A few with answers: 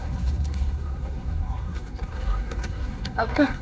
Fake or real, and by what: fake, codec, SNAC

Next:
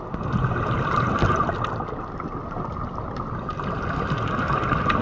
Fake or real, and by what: real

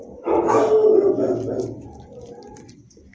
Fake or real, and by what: real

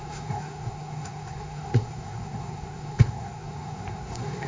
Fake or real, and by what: fake, codec, SNAC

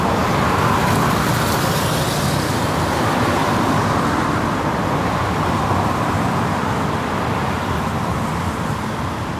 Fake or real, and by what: real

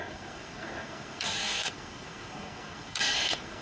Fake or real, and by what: fake, codec, SNAC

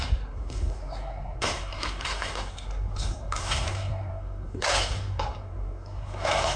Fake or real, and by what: fake, codec, SNAC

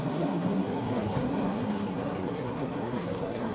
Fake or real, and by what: fake, codec, SNAC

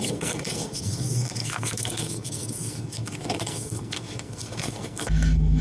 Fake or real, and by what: fake, codec, SNAC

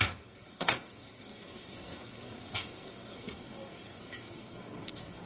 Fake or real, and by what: fake, codec, SNAC